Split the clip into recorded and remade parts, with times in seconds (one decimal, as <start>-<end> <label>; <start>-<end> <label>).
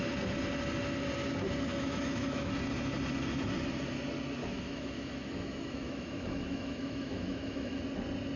0.0-1.7 recorded; 1.7-2.5 remade; 2.5-4.4 recorded; 4.4-7.8 remade; 7.8-8.4 recorded